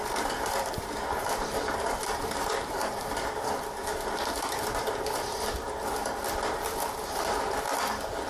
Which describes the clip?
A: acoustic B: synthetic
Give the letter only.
B